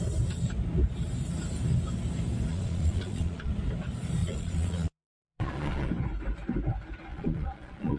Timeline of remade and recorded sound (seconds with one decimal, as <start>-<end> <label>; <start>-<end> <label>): 0.0-2.5 recorded; 2.5-3.5 remade; 3.5-4.2 recorded; 4.2-5.9 remade; 5.9-7.1 recorded; 7.1-8.0 remade